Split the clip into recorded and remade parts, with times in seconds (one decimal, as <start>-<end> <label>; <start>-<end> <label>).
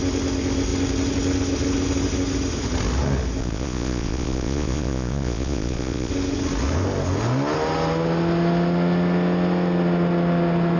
0.0-3.4 recorded; 3.4-6.1 remade; 6.1-10.8 recorded